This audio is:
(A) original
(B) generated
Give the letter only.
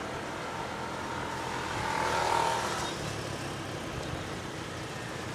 A